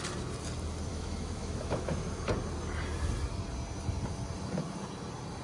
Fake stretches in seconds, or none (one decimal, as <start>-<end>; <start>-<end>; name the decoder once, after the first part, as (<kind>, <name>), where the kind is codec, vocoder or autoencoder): 0.9-2.3 (autoencoder, DAC-VAE)